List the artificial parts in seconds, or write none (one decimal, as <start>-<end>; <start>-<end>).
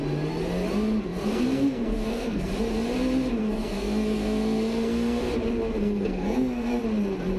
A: 1.1-2.5; 3.4-5.2; 5.8-6.8